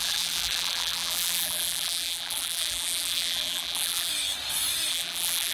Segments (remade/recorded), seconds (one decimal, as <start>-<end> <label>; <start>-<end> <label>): 0.0-4.1 remade; 4.1-4.9 recorded; 4.9-5.5 remade